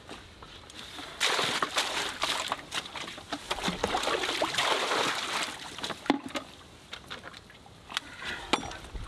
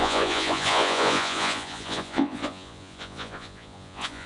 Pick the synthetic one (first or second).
second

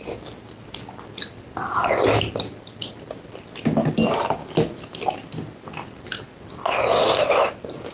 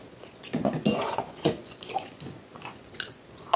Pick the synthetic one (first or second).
second